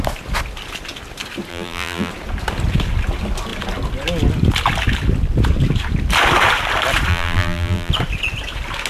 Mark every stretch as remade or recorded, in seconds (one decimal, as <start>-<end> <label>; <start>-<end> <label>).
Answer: 0.0-1.5 recorded; 1.5-2.1 remade; 2.1-7.1 recorded; 7.1-7.9 remade; 7.9-8.9 recorded